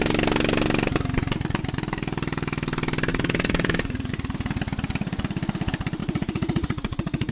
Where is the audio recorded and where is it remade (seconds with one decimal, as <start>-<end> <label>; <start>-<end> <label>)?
0.0-3.1 recorded; 3.1-4.1 remade; 4.1-6.0 recorded; 6.0-7.3 remade

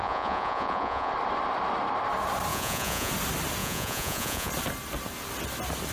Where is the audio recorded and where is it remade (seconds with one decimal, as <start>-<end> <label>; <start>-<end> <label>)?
0.0-1.1 remade; 1.1-2.5 recorded; 2.5-3.1 remade; 3.1-3.6 recorded; 3.6-4.5 remade; 4.5-5.9 recorded

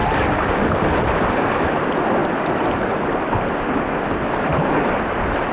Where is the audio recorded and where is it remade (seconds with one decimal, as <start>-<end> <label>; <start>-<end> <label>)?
0.0-5.5 recorded

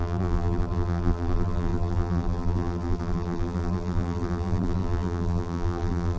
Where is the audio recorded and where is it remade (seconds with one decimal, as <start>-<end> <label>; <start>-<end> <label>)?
0.0-6.2 remade

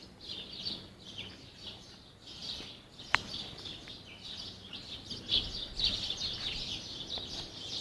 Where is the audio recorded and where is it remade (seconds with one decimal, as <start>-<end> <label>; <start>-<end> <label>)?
0.0-7.8 recorded

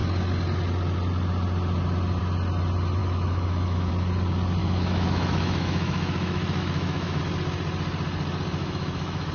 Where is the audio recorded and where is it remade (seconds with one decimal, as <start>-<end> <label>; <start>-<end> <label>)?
0.0-3.0 recorded; 3.0-3.9 remade; 3.9-4.6 recorded; 4.6-7.2 remade; 7.2-8.6 recorded; 8.6-9.3 remade

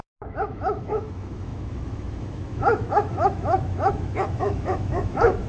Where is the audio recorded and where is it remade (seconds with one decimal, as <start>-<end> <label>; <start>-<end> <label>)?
0.0-5.5 remade